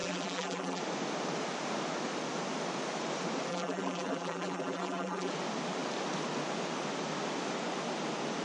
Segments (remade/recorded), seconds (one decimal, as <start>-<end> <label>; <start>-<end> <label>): 0.0-0.8 remade; 0.8-3.5 recorded; 3.5-5.3 remade; 5.3-8.4 recorded